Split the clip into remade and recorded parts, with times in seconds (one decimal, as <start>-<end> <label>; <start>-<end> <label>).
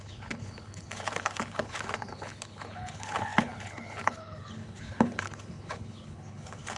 0.0-6.8 remade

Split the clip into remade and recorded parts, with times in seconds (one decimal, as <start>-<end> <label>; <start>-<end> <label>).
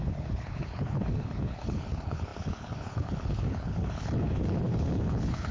0.0-5.5 remade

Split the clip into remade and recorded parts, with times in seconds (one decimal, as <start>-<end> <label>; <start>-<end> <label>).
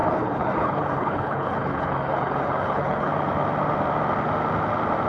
0.0-3.1 remade; 3.1-5.1 recorded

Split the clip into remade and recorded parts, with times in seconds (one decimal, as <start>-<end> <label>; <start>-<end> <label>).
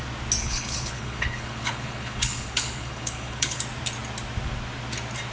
0.0-0.4 recorded; 0.4-3.6 remade; 3.6-5.3 recorded